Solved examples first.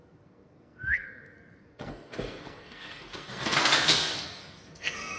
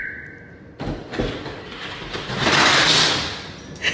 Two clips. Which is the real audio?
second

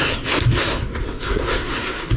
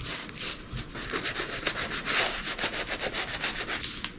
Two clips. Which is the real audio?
second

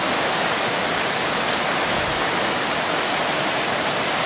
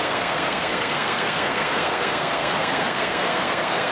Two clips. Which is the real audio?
first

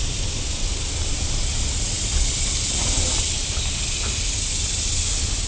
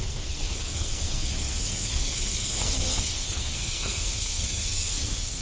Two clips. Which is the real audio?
first